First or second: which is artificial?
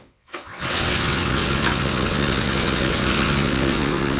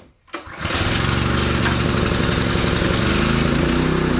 first